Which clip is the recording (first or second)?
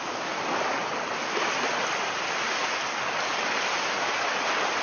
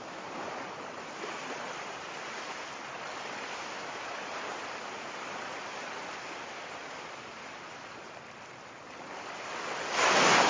first